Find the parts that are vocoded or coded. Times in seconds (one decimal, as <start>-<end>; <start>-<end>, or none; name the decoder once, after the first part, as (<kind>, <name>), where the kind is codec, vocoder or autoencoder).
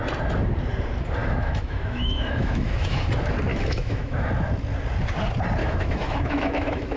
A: 1.2-3.0 (autoencoder, DAC-VAE); 3.5-4.3; 5.6-7.0